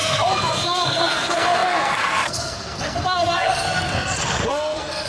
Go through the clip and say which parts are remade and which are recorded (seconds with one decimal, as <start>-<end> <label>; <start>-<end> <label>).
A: 0.0-5.1 remade